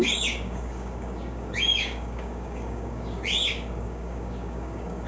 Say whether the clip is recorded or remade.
remade